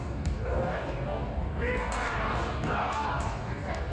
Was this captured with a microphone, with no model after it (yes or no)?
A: no